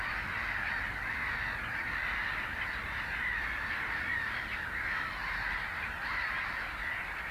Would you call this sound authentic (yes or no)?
yes